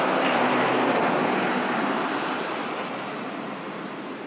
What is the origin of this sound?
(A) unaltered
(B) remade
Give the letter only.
A